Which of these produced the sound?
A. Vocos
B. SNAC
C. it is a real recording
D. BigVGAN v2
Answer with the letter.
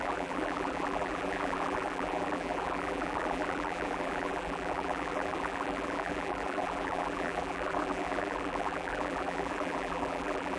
D